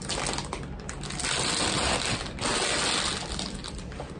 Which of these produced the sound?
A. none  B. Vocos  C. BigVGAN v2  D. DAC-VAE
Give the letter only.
A